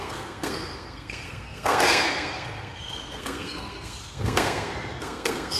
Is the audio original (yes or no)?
no